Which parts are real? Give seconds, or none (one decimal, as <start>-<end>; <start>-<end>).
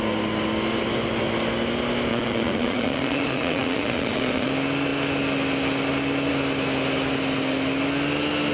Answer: 0.0-2.1; 4.5-8.5